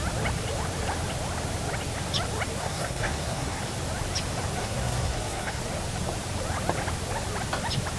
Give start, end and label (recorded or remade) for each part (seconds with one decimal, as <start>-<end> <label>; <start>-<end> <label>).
0.0-2.6 recorded; 2.6-3.6 remade; 3.6-4.6 recorded; 4.6-5.6 remade; 5.6-8.0 recorded